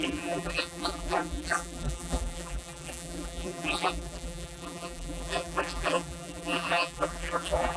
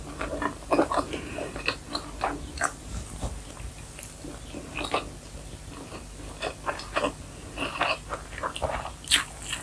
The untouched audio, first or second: second